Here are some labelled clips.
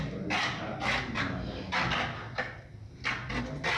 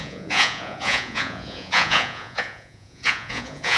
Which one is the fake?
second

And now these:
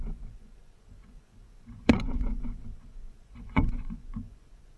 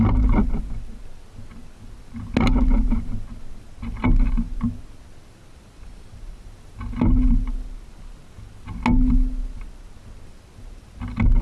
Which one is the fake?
first